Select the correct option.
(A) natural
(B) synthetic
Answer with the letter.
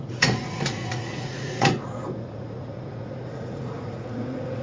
B